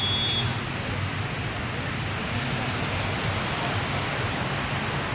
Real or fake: real